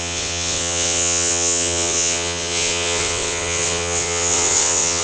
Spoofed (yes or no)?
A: yes